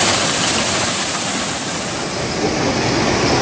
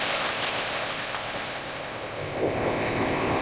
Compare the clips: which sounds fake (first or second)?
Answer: second